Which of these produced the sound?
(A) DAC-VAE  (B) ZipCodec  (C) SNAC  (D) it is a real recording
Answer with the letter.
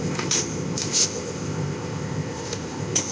B